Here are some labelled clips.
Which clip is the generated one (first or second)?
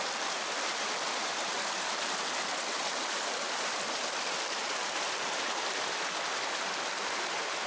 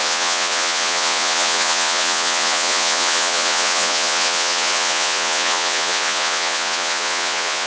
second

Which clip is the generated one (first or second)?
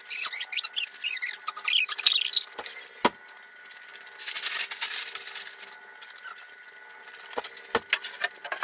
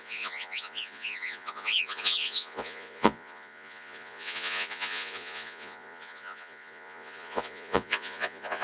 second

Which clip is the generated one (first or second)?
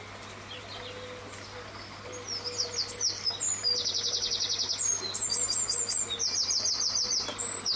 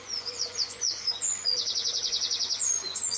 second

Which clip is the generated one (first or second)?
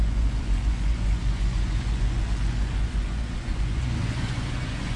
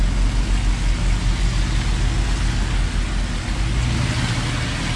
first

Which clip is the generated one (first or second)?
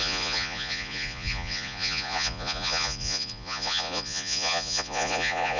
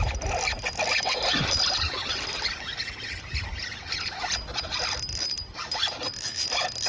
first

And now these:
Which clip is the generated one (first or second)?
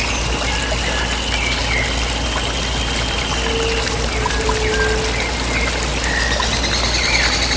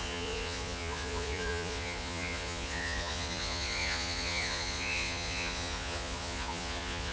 second